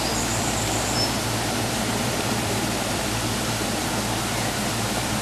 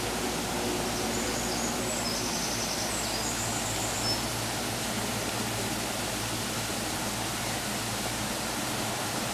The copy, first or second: first